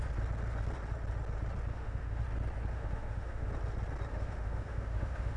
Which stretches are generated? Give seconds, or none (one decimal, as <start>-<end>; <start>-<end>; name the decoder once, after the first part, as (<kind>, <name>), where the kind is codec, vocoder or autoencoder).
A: 1.7-2.2 (autoencoder, DAC-VAE); 2.7-3.5; 4.1-5.4